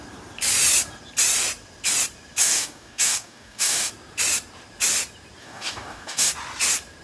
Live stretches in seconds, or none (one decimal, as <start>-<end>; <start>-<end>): 0.0-2.4; 3.9-5.4; 6.3-7.0